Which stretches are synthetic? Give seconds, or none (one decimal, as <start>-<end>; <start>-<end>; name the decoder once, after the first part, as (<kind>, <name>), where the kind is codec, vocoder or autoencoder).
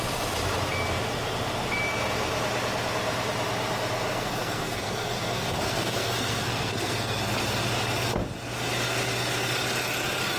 4.1-7.2 (codec, SNAC)